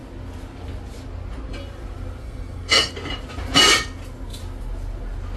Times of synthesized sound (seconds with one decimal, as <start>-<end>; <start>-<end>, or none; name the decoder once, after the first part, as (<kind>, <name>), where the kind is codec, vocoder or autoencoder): 2.2-2.9 (codec, SNAC)